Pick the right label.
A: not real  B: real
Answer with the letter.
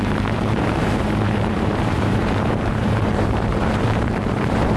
A